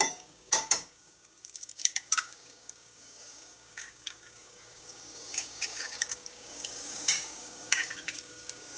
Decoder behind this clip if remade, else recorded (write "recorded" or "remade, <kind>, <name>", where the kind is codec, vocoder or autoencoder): remade, codec, DAC